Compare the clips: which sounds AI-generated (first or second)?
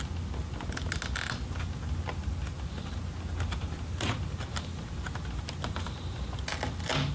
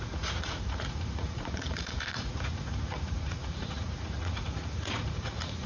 second